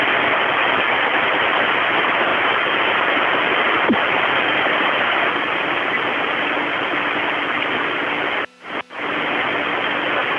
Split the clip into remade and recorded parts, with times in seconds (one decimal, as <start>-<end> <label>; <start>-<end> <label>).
0.0-10.4 recorded